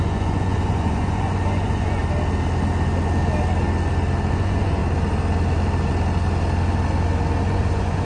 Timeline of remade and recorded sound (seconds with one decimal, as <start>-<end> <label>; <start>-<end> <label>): 0.0-2.0 remade; 2.0-4.3 recorded; 4.3-4.8 remade; 4.8-7.5 recorded; 7.5-8.0 remade